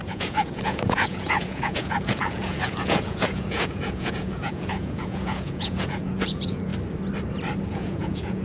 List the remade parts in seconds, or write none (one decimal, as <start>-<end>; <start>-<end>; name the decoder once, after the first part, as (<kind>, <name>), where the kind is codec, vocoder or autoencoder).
0.0-6.7 (vocoder, Vocos); 7.7-8.4